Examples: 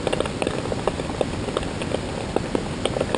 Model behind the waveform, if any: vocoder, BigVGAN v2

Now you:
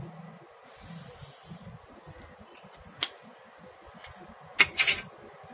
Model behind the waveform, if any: none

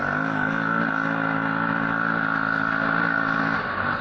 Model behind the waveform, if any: none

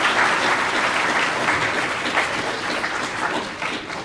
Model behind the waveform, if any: none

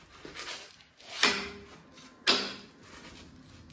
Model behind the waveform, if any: none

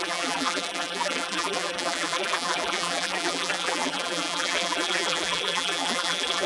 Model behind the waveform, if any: vocoder, BigVGAN v2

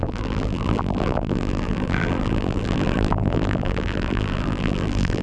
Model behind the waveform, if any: vocoder, BigVGAN v2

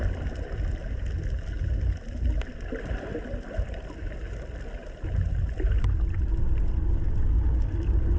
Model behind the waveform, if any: none